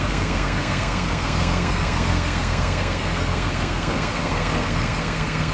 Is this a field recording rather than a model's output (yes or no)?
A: no